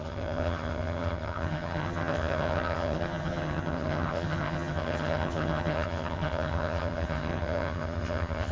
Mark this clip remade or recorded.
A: remade